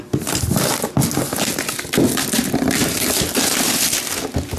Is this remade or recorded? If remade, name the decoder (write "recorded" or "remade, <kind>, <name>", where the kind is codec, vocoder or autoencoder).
recorded